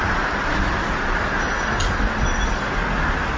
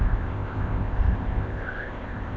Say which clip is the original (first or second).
first